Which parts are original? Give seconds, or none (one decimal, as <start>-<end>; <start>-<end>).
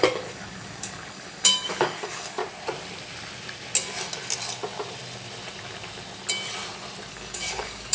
2.4-7.1